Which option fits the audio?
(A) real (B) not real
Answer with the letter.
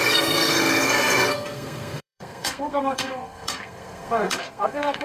B